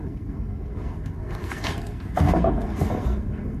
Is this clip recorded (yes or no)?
no